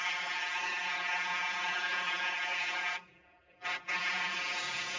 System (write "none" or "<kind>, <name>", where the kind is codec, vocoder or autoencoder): codec, SNAC